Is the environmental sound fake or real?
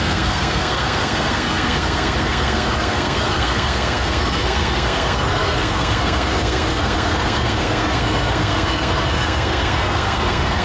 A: fake